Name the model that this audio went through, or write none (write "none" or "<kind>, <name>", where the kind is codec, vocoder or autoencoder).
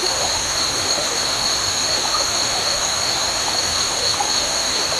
autoencoder, DAC-VAE